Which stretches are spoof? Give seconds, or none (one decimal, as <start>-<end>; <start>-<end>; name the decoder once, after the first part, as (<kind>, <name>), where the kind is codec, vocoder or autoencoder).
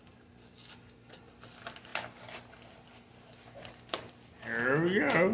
none